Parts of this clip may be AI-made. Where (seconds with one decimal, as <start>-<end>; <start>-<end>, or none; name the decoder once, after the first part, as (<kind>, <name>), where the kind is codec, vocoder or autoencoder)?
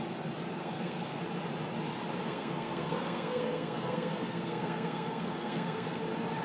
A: 0.6-1.2 (codec, SNAC); 2.2-6.0